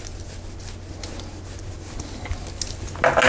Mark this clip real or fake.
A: real